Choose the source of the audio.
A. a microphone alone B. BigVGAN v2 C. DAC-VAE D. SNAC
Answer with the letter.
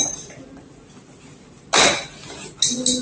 A